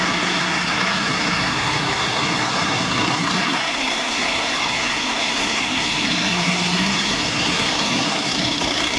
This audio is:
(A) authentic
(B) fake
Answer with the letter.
B